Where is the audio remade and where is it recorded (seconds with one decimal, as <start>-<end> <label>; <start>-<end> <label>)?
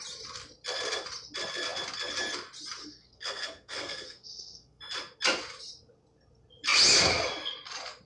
0.0-2.8 recorded; 2.8-4.8 remade; 4.8-8.1 recorded